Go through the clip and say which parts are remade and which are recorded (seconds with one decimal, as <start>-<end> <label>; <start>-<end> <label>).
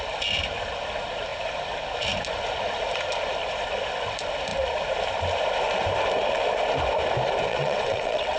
0.0-7.5 recorded; 7.5-8.4 remade